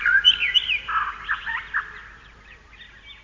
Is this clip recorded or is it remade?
recorded